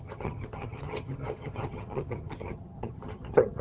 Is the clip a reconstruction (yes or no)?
yes